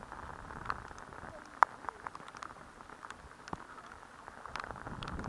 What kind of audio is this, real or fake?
real